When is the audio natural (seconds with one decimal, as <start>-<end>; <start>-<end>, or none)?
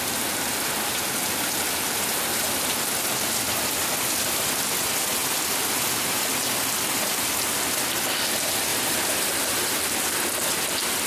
0.0-8.7; 9.8-11.1